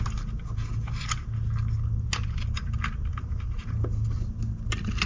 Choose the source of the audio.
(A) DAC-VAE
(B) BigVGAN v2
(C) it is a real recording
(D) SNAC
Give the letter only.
C